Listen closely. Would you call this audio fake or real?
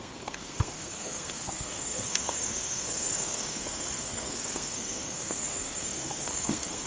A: fake